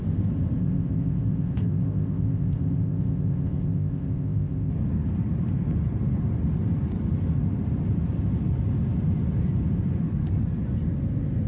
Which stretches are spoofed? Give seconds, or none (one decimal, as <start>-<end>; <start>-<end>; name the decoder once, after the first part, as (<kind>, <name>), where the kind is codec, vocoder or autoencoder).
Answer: 0.6-4.7 (codec, ZipCodec)